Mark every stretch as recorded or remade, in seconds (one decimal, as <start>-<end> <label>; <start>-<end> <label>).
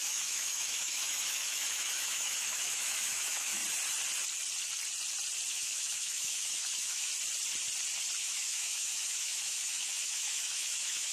0.0-3.6 remade; 3.6-5.5 recorded; 5.5-7.1 remade; 7.1-8.2 recorded; 8.2-11.1 remade